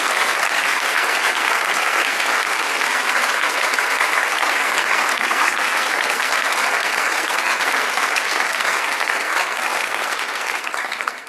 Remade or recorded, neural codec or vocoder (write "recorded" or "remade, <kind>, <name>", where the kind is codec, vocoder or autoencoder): remade, codec, SNAC